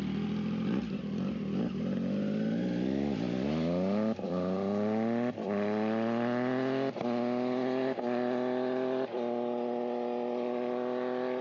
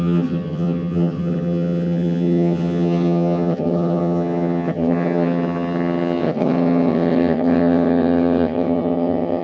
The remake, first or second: second